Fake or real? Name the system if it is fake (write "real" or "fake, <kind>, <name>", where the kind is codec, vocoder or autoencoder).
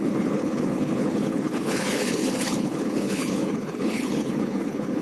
fake, codec, HILCodec